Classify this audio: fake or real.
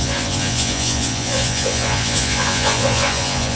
fake